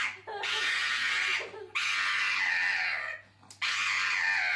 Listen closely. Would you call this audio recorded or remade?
recorded